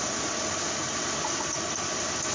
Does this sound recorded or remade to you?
recorded